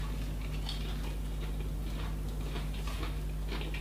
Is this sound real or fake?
real